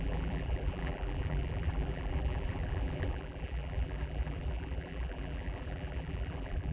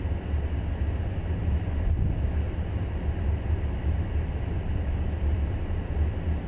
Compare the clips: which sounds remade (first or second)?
first